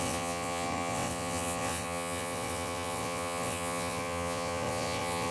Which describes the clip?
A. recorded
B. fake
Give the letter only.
B